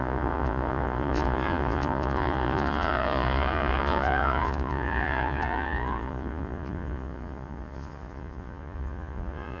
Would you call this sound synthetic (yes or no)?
yes